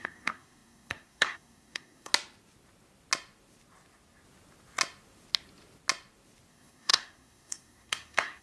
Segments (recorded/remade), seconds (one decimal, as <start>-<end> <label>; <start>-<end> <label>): 0.0-2.1 remade; 2.1-6.5 recorded; 6.5-8.4 remade

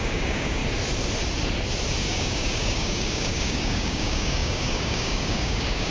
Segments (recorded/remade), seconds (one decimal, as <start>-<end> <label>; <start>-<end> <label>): 0.0-0.6 remade; 0.6-2.0 recorded; 2.0-5.9 remade

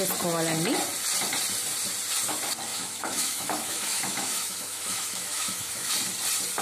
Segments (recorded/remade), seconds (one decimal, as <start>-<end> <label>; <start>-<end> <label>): 0.0-2.7 recorded; 2.7-5.9 remade; 5.9-6.6 recorded